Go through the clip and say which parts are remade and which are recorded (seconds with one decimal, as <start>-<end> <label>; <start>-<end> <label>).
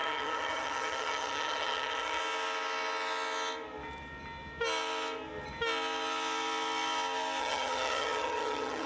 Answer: 0.0-2.2 remade; 2.2-7.4 recorded; 7.4-8.9 remade